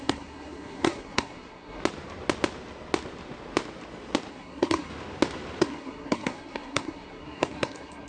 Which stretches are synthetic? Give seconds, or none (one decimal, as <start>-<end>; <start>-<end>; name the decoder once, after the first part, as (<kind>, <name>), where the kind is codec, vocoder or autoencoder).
0.0-1.8 (codec, SNAC); 4.3-4.9; 5.6-8.1